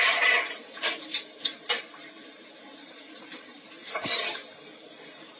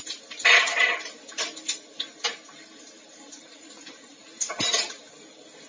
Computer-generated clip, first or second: first